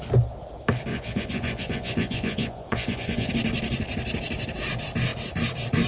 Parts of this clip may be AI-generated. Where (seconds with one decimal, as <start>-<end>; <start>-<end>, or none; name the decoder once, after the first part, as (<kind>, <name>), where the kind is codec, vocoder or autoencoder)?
0.9-3.3 (vocoder, Vocos)